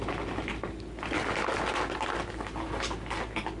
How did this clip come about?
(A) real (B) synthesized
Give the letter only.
A